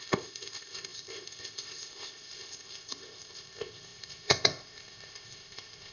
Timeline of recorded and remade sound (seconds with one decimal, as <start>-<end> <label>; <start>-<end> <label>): 0.0-5.9 remade